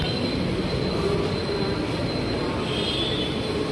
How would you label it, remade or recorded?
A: recorded